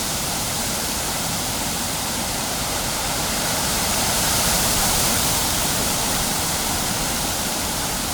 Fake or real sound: fake